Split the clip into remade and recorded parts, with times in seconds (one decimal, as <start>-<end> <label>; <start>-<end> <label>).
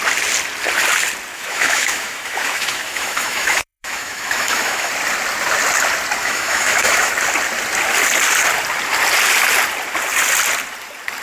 0.0-1.3 recorded; 1.3-4.9 remade; 4.9-6.2 recorded; 6.2-7.1 remade; 7.1-11.2 recorded